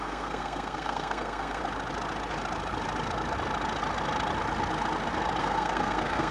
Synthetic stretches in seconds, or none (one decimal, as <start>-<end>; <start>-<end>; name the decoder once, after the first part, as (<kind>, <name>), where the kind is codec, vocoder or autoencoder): 0.0-1.6 (codec, SNAC); 5.4-6.3